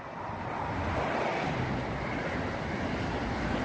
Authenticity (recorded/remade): recorded